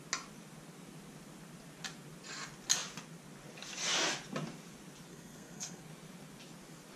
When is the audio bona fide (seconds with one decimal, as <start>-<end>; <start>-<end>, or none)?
0.0-5.1; 5.8-7.0